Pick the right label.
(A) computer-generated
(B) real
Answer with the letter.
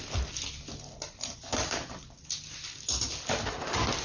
B